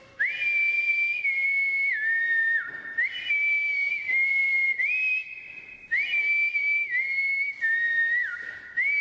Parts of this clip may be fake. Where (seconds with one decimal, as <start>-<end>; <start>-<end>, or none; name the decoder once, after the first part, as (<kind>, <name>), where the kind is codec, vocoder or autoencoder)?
none